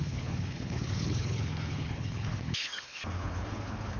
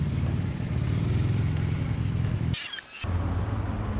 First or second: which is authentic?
second